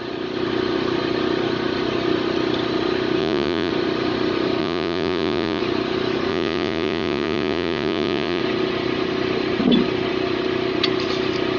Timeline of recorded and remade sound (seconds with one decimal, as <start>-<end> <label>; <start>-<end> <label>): 0.0-3.2 recorded; 3.2-3.7 remade; 3.7-4.6 recorded; 4.6-5.6 remade; 5.6-6.3 recorded; 6.3-8.4 remade; 8.4-11.6 recorded